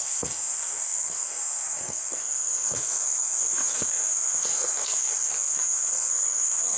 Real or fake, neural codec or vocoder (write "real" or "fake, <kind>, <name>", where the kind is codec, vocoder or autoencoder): fake, codec, SNAC